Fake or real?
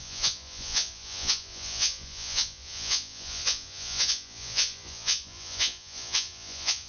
fake